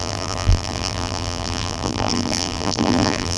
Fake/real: fake